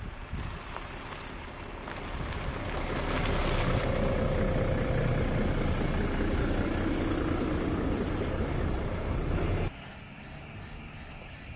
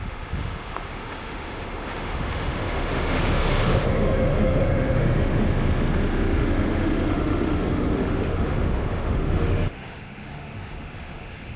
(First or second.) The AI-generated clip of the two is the second